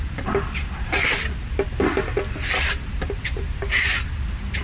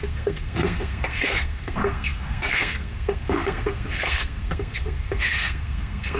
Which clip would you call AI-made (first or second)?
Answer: second